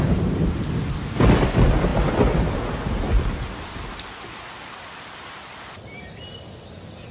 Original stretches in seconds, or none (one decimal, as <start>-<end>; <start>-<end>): 0.0-7.1